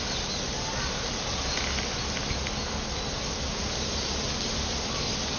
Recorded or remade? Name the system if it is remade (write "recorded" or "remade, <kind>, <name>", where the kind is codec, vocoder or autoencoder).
recorded